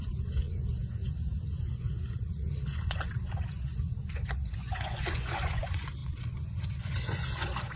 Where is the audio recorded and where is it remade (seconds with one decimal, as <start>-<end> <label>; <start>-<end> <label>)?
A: 0.0-7.8 remade